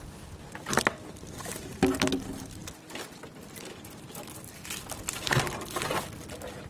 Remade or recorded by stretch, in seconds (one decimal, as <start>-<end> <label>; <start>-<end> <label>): 0.0-6.7 recorded